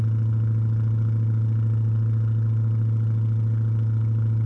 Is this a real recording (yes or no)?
yes